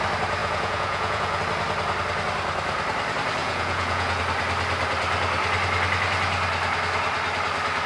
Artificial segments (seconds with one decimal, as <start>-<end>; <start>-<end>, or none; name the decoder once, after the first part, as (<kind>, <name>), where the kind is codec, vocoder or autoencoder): 0.4-1.4 (vocoder, Vocos); 3.4-4.2